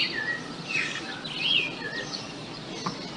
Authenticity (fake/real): real